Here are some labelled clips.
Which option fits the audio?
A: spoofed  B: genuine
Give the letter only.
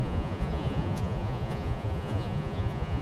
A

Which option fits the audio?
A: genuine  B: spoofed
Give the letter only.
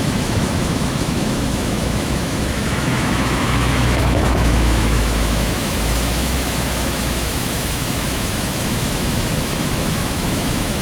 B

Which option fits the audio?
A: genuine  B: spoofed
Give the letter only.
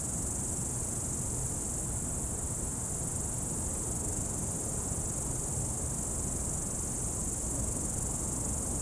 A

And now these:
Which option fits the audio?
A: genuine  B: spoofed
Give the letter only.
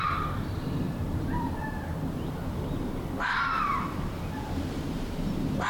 B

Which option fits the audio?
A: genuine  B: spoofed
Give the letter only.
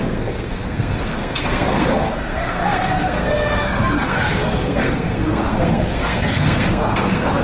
B